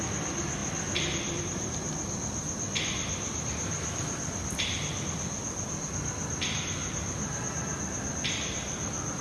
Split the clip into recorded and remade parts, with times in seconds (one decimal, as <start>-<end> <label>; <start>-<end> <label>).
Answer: 0.0-9.2 recorded